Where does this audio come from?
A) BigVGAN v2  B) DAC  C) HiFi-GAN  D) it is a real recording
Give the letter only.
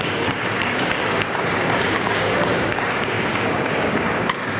B